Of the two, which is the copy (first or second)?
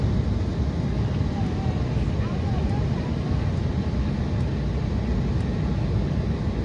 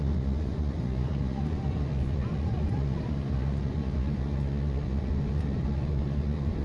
second